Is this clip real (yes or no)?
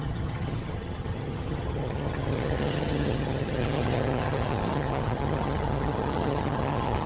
no